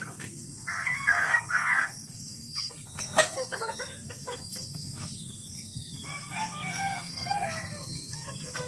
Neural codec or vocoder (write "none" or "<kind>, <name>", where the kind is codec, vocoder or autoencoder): codec, SNAC